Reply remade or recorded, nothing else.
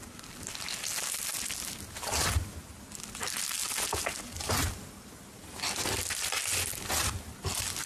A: recorded